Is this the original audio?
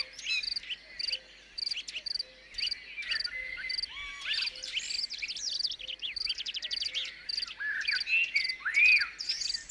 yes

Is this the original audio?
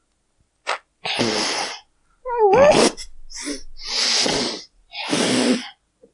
yes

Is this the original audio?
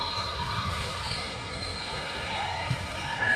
no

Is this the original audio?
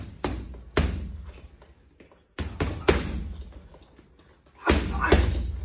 yes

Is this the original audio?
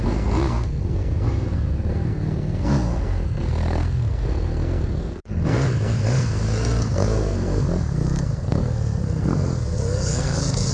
no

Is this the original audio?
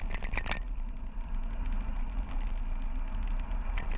yes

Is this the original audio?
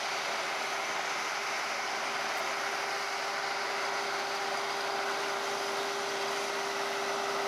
yes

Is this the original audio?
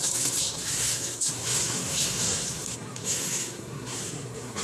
no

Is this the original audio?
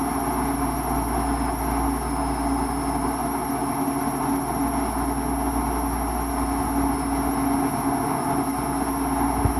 yes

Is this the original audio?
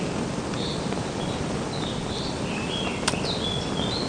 yes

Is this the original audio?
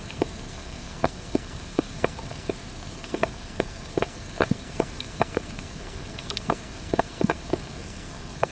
no